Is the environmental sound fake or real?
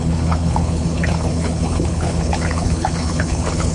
fake